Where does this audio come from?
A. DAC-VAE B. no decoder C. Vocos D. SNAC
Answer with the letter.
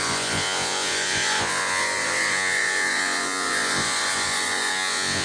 C